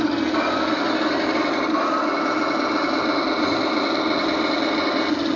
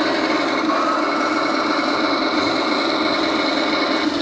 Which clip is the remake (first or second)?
second